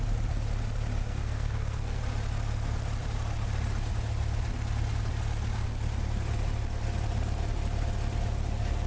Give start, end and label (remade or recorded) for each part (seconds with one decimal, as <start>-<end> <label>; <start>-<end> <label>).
0.0-1.0 recorded; 1.0-2.0 remade; 2.0-8.9 recorded